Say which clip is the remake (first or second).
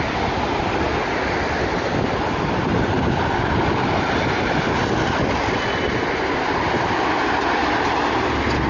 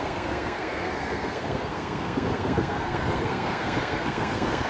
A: second